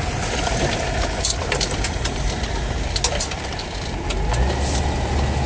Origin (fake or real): real